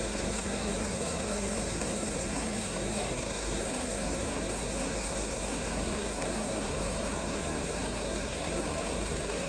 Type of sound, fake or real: fake